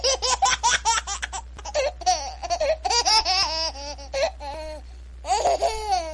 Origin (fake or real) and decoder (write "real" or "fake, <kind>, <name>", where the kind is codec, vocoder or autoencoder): real